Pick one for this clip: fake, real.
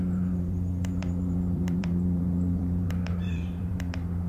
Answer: fake